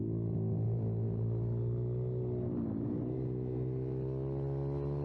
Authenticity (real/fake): real